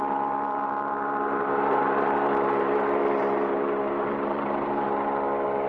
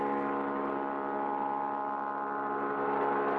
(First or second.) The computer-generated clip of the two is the first